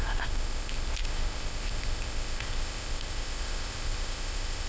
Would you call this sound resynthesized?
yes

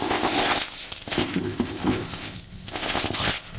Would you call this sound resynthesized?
yes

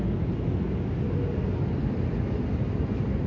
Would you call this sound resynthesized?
no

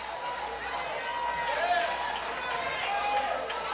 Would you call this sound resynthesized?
no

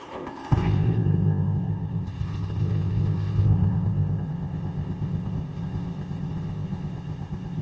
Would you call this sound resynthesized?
yes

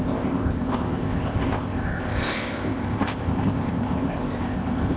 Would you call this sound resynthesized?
yes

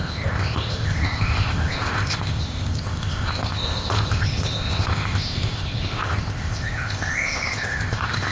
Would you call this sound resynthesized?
yes